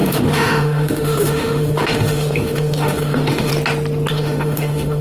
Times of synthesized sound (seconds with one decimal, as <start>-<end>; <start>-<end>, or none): 0.0-3.5; 4.1-5.0